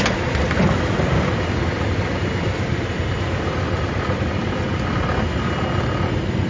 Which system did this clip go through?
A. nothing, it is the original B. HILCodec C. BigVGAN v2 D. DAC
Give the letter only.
A